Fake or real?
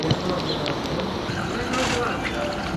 real